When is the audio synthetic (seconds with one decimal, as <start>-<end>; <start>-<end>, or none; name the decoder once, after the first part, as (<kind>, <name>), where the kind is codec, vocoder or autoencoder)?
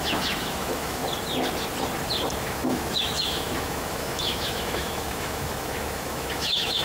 0.0-1.0 (autoencoder, DAC-VAE); 2.4-6.8